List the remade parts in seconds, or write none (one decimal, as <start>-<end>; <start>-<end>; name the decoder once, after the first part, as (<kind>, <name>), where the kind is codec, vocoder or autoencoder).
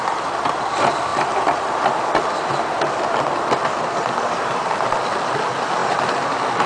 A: none